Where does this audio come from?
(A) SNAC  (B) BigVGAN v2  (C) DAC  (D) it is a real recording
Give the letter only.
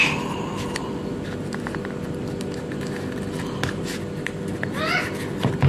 D